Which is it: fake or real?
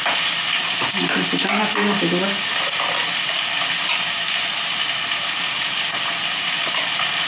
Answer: real